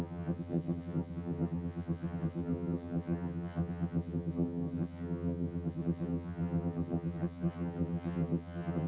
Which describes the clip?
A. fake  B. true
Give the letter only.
A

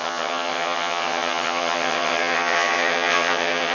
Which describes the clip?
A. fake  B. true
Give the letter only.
A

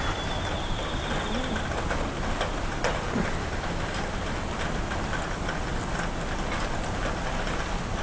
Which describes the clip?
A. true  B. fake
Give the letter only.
A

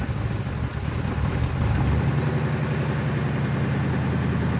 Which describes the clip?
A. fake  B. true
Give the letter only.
B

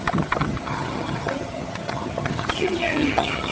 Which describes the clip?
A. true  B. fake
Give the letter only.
B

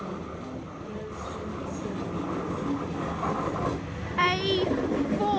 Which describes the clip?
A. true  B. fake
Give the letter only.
A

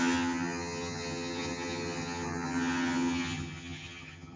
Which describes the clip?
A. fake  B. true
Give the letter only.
A